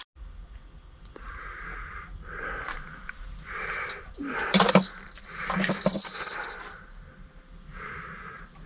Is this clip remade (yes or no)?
no